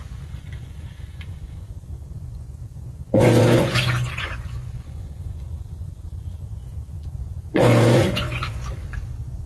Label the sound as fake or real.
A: fake